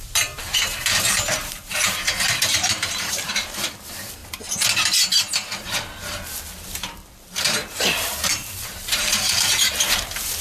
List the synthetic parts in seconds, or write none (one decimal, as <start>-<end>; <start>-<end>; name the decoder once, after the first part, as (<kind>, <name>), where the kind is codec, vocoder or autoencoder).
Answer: 0.0-4.2 (vocoder, BigVGAN v2); 7.4-10.4